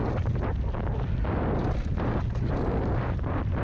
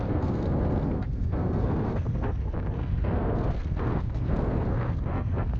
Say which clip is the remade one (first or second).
second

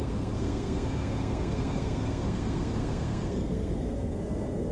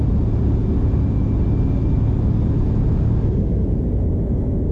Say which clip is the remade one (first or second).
first